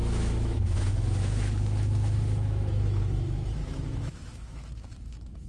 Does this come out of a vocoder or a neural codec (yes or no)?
yes